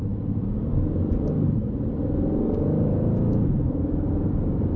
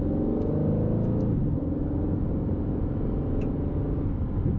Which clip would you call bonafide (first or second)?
second